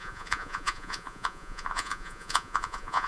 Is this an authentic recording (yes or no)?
no